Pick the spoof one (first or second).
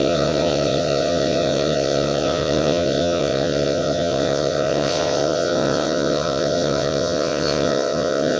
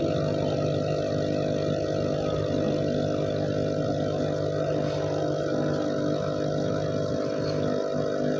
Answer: first